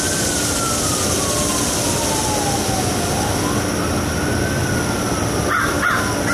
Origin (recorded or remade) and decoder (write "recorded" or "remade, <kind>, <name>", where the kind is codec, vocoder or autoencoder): recorded